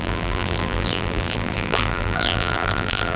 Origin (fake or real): fake